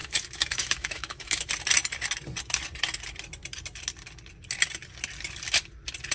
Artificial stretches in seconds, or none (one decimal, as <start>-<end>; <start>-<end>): 0.0-1.5